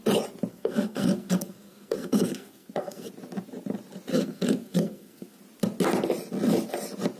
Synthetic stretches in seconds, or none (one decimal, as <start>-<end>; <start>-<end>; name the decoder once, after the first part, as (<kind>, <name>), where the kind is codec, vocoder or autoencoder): 0.5-3.1 (codec, SNAC); 4.1-5.4